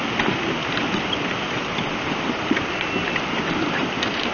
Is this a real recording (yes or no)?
yes